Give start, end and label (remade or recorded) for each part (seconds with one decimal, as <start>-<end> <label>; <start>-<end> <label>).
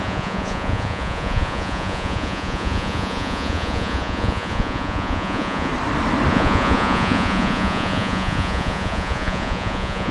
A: 0.0-5.7 remade; 5.7-6.3 recorded; 6.3-10.1 remade